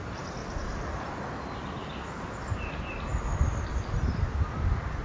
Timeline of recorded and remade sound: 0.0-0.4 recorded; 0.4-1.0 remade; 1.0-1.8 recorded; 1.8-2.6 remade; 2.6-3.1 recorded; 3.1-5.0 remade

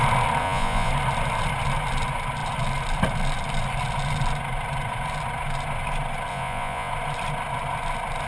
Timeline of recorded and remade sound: 0.0-0.4 recorded; 0.4-0.9 remade; 0.9-6.3 recorded; 6.3-6.9 remade; 6.9-8.3 recorded

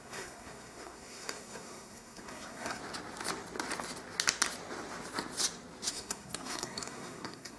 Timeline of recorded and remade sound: 0.0-2.8 remade; 2.8-5.9 recorded; 5.9-7.6 remade

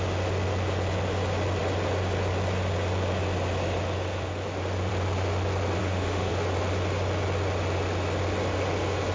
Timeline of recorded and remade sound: 0.0-5.8 recorded; 5.8-6.3 remade; 6.3-9.1 recorded